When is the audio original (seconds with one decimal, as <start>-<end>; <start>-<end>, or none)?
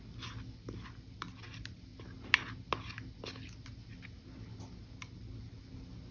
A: 0.0-6.1